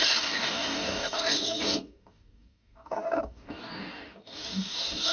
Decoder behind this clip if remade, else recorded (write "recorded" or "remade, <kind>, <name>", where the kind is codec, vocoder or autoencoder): remade, codec, DAC